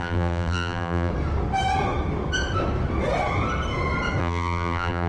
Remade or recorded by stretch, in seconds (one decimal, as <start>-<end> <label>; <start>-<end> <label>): 0.0-1.1 remade; 1.1-4.2 recorded; 4.2-5.1 remade